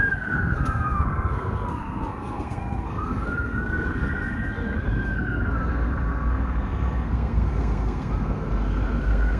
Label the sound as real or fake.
fake